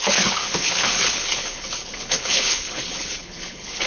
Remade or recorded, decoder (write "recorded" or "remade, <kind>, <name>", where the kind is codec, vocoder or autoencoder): remade, codec, HILCodec